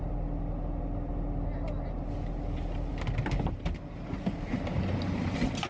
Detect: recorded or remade recorded